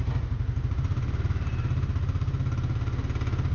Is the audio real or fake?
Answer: real